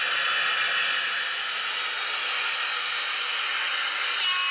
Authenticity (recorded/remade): recorded